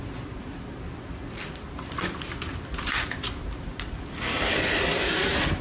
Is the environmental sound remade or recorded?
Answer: recorded